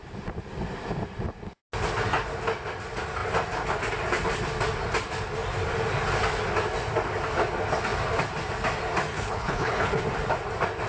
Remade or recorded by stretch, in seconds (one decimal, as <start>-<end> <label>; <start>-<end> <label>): 0.0-9.1 recorded; 9.1-10.0 remade; 10.0-10.9 recorded